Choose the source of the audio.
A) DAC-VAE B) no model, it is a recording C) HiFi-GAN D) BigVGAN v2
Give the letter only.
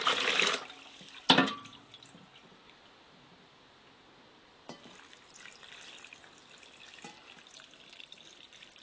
B